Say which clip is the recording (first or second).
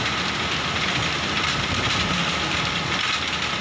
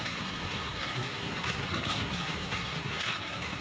first